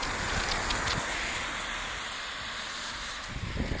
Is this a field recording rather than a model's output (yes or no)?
yes